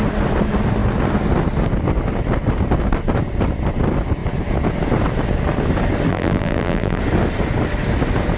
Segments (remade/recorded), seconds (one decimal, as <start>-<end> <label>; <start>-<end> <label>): 0.0-6.1 recorded; 6.1-7.0 remade; 7.0-8.4 recorded